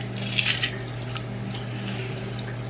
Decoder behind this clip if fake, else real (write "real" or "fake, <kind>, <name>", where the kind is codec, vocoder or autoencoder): real